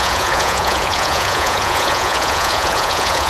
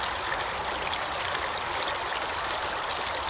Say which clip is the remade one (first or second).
first